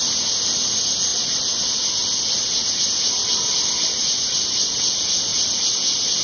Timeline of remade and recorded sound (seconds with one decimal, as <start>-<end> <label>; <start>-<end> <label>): 0.0-3.2 recorded; 3.2-4.4 remade; 4.4-5.3 recorded; 5.3-6.2 remade